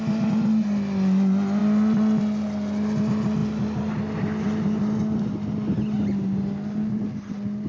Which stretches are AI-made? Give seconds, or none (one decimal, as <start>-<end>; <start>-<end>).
none